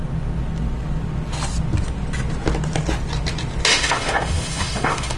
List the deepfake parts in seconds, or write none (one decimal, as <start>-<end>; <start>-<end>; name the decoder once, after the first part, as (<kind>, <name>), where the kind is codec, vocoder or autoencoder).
3.7-5.2 (autoencoder, DAC-VAE)